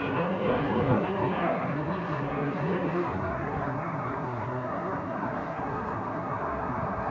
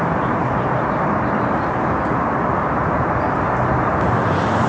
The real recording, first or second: second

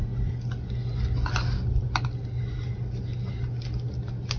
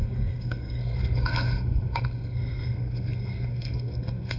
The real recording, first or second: first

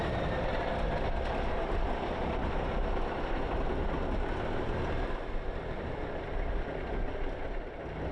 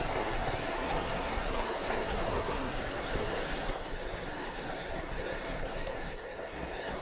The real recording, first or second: first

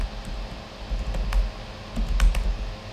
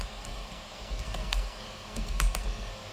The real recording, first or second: first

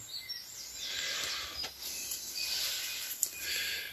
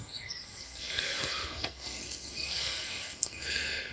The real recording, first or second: first